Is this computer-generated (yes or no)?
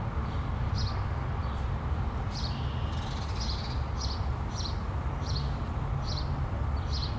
no